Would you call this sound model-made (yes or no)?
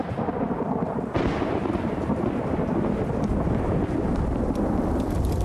no